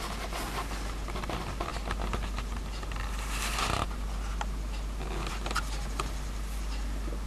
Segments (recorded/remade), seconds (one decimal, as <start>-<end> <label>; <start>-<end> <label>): 0.0-7.3 recorded